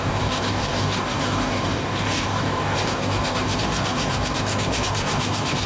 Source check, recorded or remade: remade